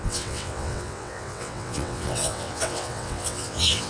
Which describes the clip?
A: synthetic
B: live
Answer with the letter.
A